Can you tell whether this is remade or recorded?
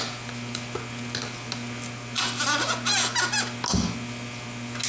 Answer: recorded